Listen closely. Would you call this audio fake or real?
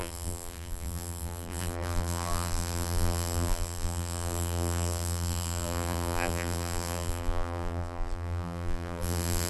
fake